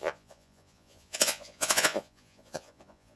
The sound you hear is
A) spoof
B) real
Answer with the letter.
A